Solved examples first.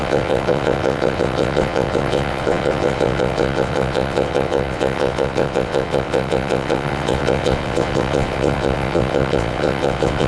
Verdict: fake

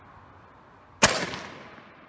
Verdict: real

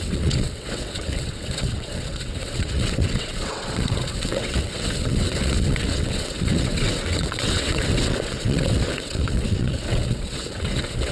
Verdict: fake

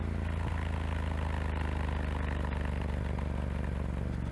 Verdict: real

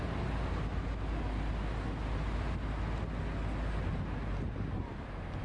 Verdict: real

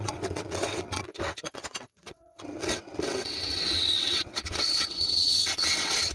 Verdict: fake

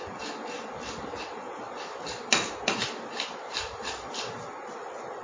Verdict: real